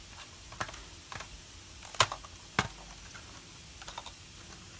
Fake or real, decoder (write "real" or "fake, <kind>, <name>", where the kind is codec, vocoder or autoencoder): real